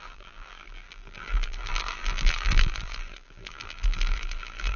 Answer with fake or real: fake